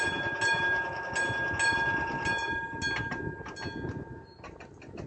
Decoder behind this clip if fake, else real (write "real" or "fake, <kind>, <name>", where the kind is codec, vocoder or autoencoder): real